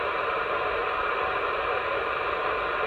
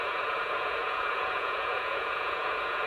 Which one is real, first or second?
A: first